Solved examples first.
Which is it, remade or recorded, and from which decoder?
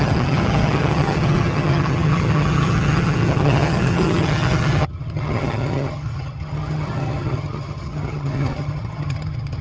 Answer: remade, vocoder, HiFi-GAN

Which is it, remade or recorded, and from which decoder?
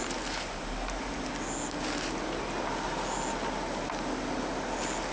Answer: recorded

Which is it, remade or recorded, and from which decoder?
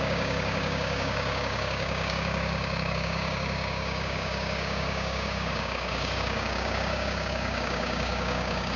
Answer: remade, codec, DAC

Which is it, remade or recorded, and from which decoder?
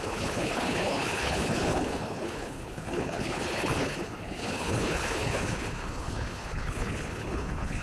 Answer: remade, codec, HILCodec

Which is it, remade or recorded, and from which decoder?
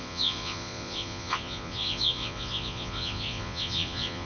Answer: remade, vocoder, Vocos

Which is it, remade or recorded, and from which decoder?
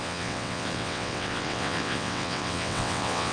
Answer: remade, vocoder, WaveNeXt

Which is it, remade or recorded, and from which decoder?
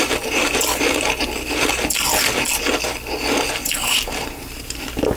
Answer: recorded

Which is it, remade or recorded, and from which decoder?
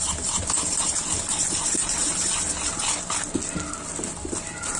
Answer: recorded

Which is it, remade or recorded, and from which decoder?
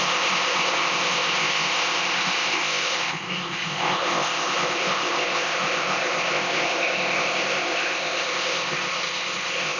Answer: remade, codec, ZipCodec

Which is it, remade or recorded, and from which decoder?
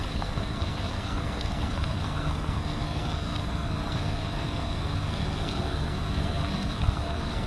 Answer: remade, codec, SNAC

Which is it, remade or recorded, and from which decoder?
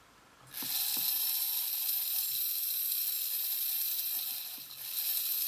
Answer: recorded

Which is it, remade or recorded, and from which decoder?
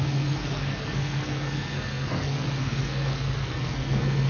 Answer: remade, codec, SNAC